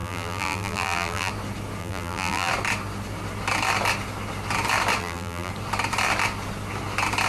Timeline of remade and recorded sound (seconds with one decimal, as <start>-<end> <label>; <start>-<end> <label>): 0.0-1.3 remade; 1.3-1.8 recorded; 1.8-2.5 remade; 2.5-5.0 recorded; 5.0-5.5 remade; 5.5-7.3 recorded